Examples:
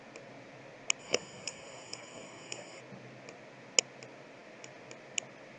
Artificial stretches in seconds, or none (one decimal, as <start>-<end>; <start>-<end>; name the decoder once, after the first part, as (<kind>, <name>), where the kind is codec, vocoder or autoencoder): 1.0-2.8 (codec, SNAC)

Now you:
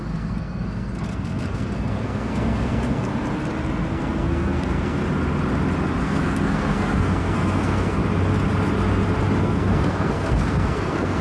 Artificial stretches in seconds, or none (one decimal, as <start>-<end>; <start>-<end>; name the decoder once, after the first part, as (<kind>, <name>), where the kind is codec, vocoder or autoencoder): 0.0-3.1 (codec, SNAC); 3.9-5.0; 6.0-8.0; 9.4-11.2

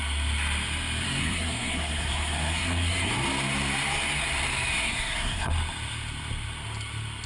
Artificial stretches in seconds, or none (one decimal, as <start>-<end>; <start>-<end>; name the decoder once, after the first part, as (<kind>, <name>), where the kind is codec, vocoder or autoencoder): 1.2-3.1 (codec, SNAC); 4.7-5.5